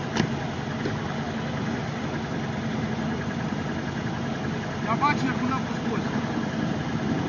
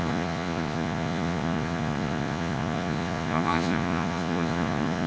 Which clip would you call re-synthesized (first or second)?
second